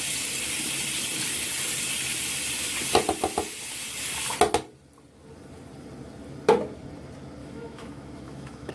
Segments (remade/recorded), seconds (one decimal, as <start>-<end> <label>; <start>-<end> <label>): 0.0-7.4 recorded; 7.4-8.7 remade

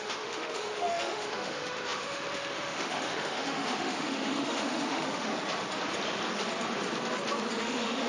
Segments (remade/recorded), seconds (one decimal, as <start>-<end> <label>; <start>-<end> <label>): 0.0-5.3 remade; 5.3-7.6 recorded; 7.6-8.1 remade

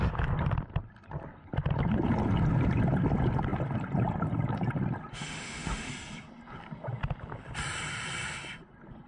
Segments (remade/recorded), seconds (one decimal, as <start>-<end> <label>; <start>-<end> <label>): 0.0-5.1 recorded; 5.1-5.9 remade; 5.9-9.1 recorded

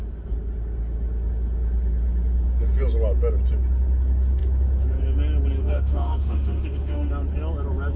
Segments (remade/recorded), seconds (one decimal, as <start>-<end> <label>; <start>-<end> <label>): 0.0-5.6 recorded; 5.6-7.1 remade; 7.1-8.0 recorded

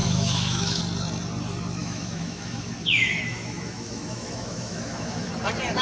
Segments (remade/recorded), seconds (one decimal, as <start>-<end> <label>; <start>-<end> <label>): 0.0-0.8 remade; 0.8-1.8 recorded; 1.8-5.3 remade; 5.3-5.8 recorded

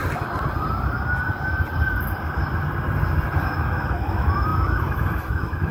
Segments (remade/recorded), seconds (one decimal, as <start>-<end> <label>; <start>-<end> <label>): 0.0-3.4 recorded; 3.4-5.7 remade

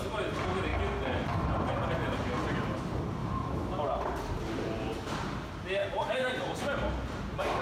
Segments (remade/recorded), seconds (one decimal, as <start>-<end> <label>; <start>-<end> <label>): 0.0-3.2 recorded; 3.2-3.8 remade; 3.8-5.8 recorded; 5.8-6.4 remade; 6.4-7.6 recorded